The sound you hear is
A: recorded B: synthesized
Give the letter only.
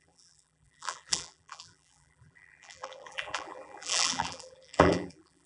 B